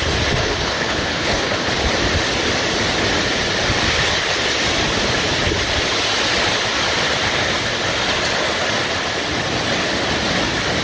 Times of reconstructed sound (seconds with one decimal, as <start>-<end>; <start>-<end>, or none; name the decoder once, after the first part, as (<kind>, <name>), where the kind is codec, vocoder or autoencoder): 0.4-1.7 (codec, HILCodec)